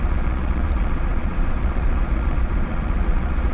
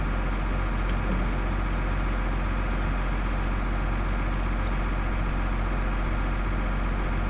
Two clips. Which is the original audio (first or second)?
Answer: second